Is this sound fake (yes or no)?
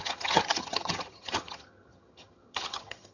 yes